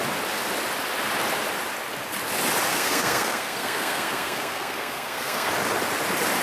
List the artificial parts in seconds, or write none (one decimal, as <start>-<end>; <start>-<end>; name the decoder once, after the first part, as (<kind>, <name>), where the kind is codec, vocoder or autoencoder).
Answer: 2.7-5.5 (codec, SNAC)